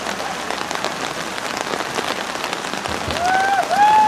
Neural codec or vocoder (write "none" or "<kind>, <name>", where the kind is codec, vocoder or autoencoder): none